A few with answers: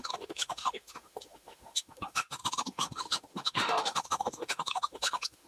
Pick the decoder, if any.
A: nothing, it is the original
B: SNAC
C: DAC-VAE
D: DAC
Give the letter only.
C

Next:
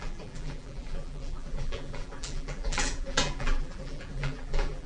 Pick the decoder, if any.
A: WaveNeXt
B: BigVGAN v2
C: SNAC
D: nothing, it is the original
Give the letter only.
B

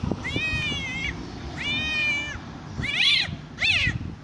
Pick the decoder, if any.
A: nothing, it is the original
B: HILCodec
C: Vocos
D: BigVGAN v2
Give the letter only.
A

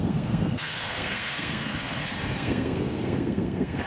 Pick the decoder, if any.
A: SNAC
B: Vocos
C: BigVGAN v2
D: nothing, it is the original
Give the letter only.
A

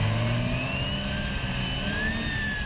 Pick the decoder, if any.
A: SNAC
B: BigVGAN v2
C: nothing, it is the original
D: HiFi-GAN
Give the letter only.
C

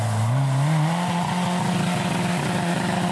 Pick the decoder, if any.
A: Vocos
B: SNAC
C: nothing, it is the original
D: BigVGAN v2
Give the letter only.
C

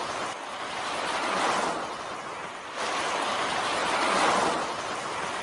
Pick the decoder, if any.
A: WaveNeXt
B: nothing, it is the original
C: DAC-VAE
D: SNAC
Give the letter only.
B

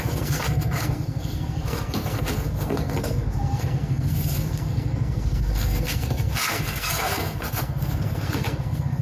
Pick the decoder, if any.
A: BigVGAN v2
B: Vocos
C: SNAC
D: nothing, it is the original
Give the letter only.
C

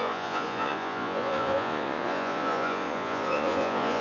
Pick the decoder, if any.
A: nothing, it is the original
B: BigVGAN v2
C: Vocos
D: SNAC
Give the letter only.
C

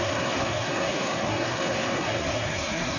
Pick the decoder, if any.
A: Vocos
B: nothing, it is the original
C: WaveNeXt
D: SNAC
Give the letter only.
D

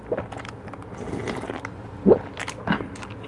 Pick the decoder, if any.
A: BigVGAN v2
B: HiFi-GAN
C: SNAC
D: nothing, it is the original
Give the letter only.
D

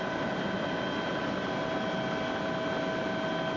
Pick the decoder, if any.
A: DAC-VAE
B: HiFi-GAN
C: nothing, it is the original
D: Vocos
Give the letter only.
C